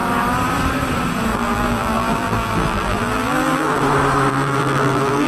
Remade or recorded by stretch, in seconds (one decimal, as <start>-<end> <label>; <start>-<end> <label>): 0.0-1.3 recorded; 1.3-3.8 remade; 3.8-4.3 recorded; 4.3-5.3 remade